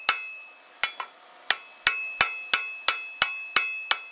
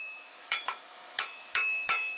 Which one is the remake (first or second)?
second